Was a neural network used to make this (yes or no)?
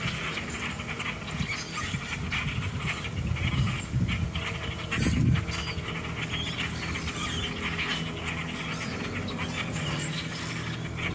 no